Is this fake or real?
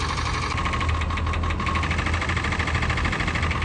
real